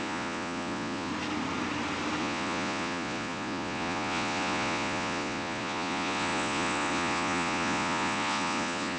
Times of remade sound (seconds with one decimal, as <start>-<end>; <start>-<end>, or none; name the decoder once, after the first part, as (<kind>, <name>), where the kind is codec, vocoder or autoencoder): 0.0-1.1 (vocoder, Vocos); 2.2-9.0